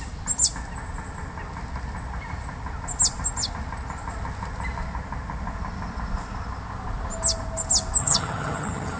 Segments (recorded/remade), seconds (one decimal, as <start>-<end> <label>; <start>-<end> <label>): 0.0-8.0 recorded; 8.0-9.0 remade